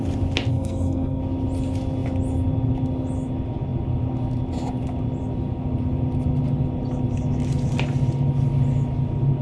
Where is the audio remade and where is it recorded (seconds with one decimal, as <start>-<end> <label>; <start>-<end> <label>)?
0.0-0.5 recorded; 0.5-1.2 remade; 1.2-9.4 recorded